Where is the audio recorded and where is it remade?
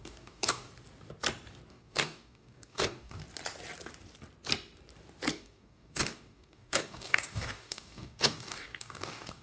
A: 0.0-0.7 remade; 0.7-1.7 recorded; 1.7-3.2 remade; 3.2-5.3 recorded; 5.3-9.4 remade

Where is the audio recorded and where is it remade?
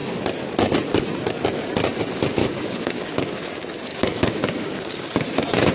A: 0.0-2.4 recorded; 2.4-3.4 remade; 3.4-3.9 recorded; 3.9-5.7 remade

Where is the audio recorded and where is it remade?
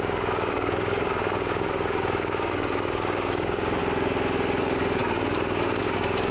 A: 0.0-3.8 remade; 3.8-4.6 recorded; 4.6-6.3 remade